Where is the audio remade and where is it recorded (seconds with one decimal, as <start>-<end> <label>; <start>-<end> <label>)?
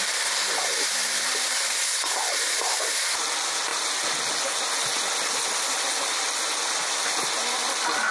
0.0-8.1 recorded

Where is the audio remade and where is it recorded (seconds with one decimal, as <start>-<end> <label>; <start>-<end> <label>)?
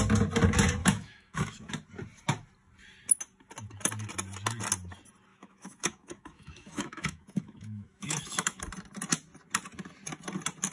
0.0-0.8 recorded; 0.8-1.7 remade; 1.7-5.3 recorded; 5.3-8.6 remade; 8.6-10.7 recorded